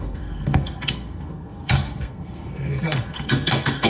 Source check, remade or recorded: remade